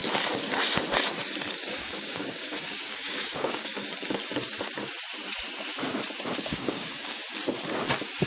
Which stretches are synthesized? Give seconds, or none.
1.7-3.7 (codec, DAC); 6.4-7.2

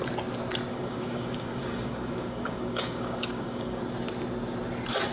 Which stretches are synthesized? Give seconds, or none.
0.7-3.8 (codec, DAC)

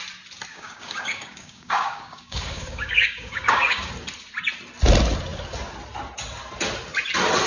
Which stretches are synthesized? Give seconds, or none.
0.5-3.9 (codec, DAC)

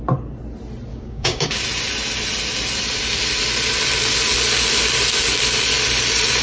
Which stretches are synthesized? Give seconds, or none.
0.9-1.6 (codec, DAC)